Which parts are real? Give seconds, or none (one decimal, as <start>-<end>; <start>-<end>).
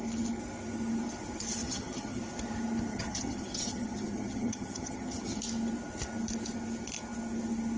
0.0-1.6; 2.2-2.9; 5.4-7.8